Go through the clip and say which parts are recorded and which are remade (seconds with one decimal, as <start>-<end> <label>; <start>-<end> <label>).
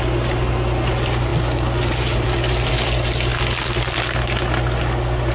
0.0-5.3 recorded